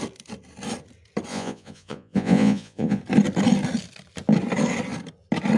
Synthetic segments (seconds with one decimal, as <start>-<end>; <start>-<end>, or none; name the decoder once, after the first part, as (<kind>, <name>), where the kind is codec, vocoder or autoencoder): 1.3-3.0 (vocoder, Vocos)